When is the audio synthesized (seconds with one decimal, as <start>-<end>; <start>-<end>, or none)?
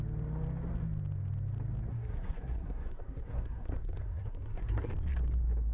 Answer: 1.9-4.9